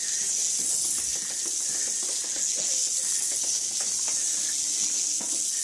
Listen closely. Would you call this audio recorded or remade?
recorded